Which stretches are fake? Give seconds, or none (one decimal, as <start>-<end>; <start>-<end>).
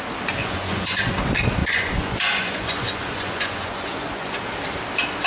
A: 0.4-1.1; 1.6-4.4